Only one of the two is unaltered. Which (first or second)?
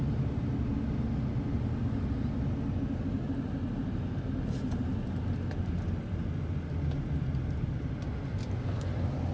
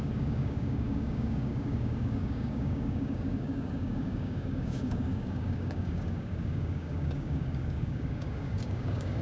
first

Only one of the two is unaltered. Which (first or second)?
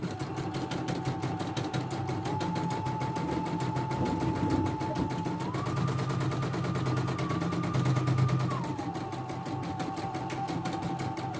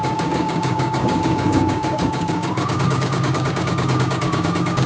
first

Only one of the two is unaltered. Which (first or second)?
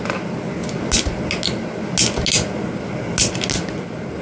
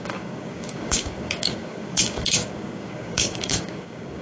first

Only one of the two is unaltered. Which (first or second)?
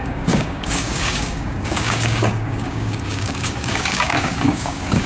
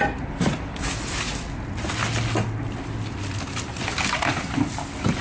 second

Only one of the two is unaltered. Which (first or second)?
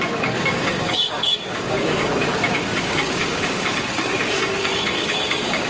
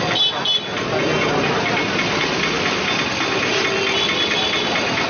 second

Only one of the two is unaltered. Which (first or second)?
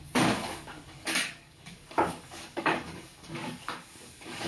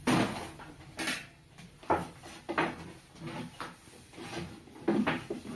second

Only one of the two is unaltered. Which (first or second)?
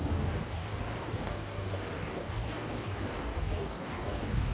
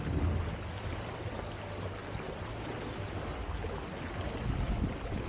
second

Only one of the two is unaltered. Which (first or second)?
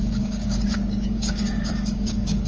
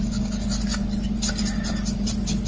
second